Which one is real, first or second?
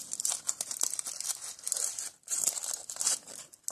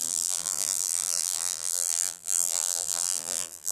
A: first